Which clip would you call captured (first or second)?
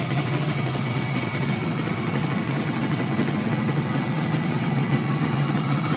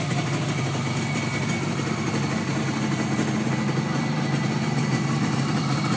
second